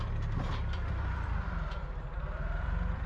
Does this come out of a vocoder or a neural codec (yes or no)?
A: yes